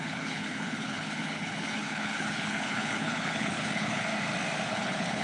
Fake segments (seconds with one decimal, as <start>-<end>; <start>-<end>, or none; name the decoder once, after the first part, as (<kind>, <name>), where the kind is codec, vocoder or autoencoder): 0.0-4.1 (codec, HILCodec); 4.7-5.2